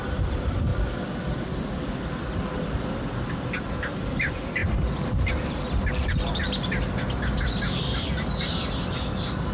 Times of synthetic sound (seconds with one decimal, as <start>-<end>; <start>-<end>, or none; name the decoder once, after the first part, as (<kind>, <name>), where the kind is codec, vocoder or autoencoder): none